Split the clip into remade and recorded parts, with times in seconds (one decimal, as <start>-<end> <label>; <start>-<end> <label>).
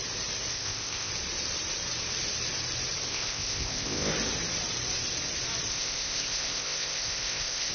0.0-0.5 recorded; 0.5-1.1 remade; 1.1-3.1 recorded; 3.1-4.1 remade; 4.1-5.7 recorded; 5.7-7.7 remade